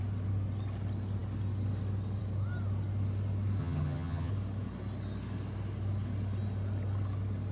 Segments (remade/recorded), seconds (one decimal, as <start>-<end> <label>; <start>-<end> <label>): 0.0-3.6 recorded; 3.6-4.3 remade; 4.3-7.5 recorded